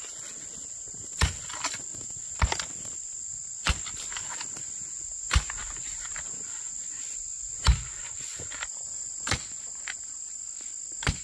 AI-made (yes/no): no